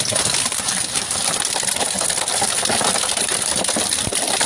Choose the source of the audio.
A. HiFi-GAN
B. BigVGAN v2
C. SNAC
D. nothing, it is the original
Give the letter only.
B